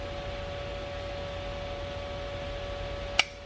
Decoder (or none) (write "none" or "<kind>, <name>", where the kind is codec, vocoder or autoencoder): none